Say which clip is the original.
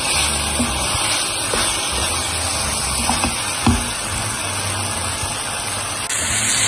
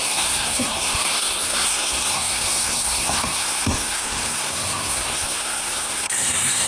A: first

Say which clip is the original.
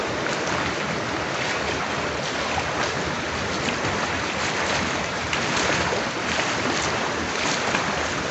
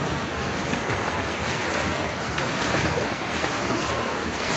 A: first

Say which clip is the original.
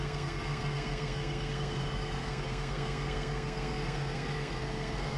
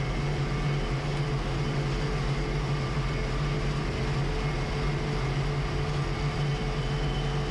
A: second